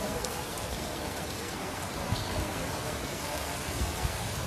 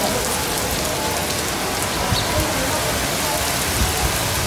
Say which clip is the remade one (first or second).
first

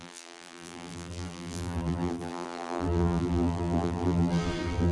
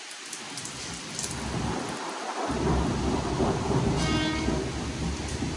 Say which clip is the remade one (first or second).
first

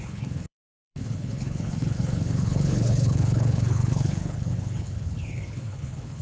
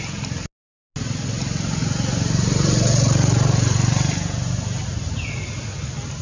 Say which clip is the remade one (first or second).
first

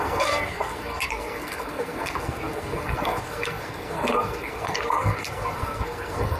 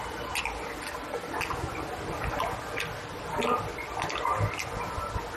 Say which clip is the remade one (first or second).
first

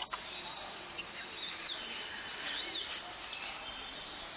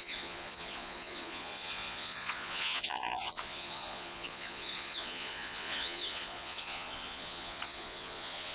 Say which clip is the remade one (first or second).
second